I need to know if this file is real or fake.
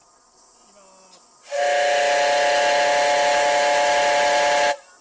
real